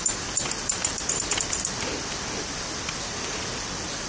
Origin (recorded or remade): remade